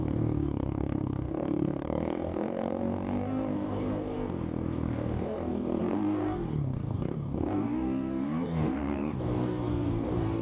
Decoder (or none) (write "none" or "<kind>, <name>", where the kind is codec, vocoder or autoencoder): codec, DAC